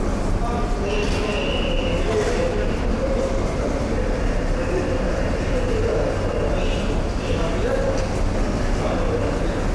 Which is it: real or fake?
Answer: real